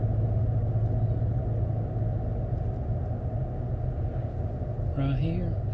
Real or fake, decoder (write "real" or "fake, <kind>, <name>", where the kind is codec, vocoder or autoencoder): real